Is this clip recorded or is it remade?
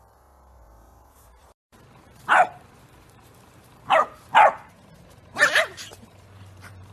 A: remade